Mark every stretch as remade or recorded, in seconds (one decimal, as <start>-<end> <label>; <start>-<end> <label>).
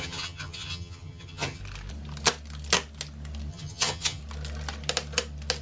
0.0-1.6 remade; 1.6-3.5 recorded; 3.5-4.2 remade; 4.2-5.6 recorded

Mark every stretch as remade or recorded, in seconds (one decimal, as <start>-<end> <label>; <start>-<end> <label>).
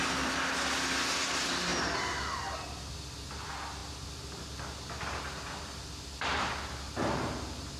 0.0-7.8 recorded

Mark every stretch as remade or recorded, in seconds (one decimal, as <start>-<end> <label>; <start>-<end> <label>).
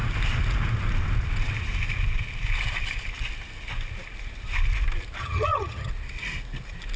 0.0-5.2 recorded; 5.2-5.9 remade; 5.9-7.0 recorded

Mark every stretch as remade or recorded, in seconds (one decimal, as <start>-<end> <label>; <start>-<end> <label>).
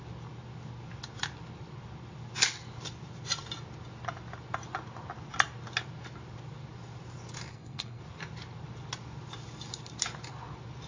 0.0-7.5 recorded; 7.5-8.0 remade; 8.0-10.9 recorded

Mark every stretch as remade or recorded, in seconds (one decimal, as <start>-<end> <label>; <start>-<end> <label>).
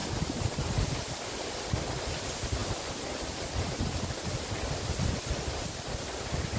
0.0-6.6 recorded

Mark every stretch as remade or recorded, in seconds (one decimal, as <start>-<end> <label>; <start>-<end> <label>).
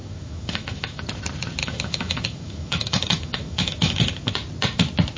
0.0-1.0 remade; 1.0-1.6 recorded; 1.6-4.0 remade; 4.0-5.2 recorded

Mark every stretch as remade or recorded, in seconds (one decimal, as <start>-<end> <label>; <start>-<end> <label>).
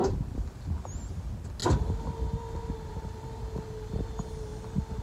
0.0-5.0 recorded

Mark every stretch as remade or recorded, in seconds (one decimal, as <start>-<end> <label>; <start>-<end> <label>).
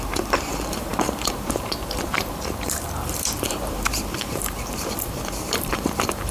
0.0-6.3 remade